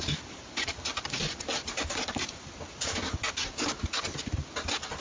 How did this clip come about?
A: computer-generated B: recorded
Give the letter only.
B